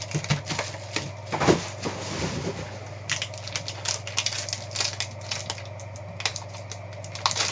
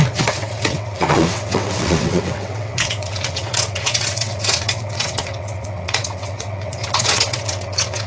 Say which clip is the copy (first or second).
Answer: second